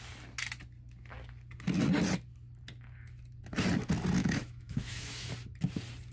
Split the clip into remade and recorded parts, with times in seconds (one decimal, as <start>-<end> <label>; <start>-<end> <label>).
0.0-4.2 recorded; 4.2-5.3 remade; 5.3-6.1 recorded